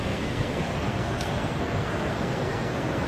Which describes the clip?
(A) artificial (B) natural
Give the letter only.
A